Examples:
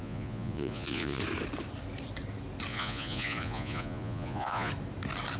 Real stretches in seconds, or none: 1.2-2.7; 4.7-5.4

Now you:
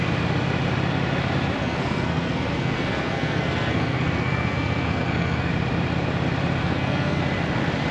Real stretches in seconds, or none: 0.0-1.6; 5.5-6.6; 7.2-7.9

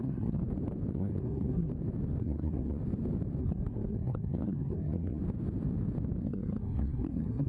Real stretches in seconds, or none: 0.4-0.9; 1.7-2.2; 2.8-3.4; 5.2-6.2